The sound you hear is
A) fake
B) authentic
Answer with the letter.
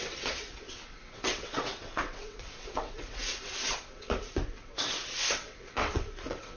A